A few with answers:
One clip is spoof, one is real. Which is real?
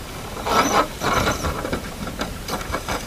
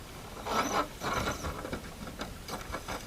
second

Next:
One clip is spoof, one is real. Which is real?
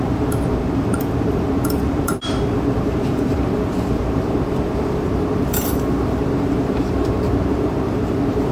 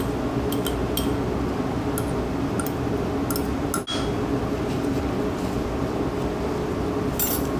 second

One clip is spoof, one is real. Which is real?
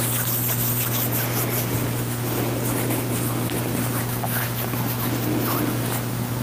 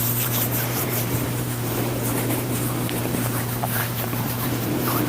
first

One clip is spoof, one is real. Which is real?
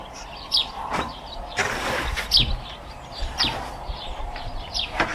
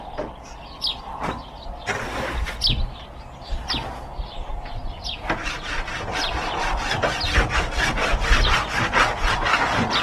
second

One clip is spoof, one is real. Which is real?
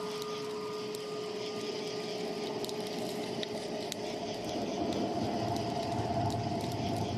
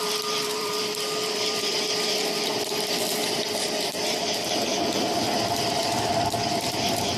first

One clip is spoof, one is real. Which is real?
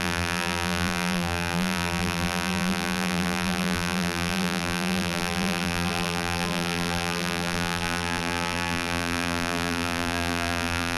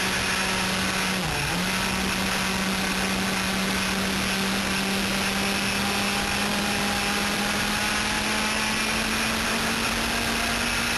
second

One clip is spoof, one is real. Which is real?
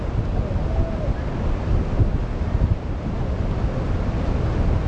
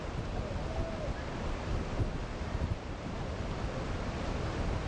first